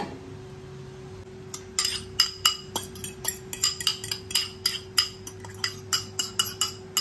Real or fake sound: real